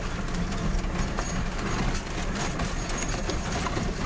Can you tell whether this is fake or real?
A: real